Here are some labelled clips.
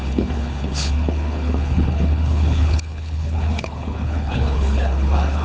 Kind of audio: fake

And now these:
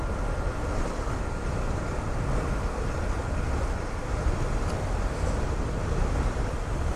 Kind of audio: real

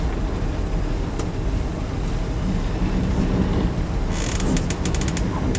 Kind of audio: real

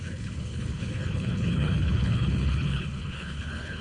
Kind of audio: fake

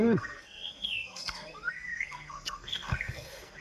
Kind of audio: fake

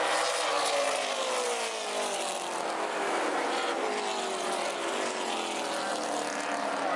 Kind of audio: real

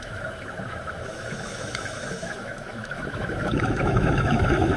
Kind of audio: fake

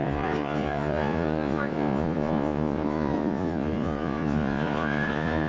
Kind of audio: fake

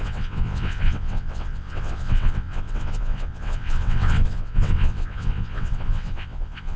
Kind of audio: fake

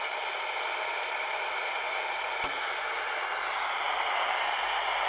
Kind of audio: real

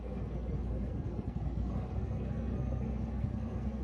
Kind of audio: fake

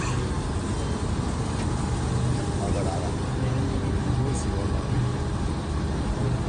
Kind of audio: real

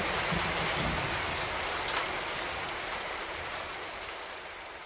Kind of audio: real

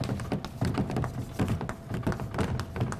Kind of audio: real